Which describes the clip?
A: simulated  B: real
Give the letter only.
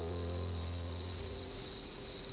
A